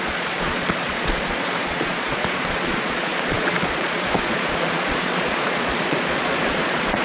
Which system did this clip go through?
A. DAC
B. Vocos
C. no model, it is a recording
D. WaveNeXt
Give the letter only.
B